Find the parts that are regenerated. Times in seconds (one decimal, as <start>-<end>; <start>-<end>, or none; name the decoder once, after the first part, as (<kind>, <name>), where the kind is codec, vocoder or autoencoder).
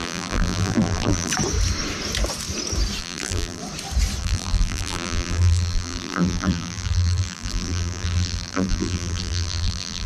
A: 0.0-1.3 (vocoder, BigVGAN v2); 3.0-3.6; 4.2-10.1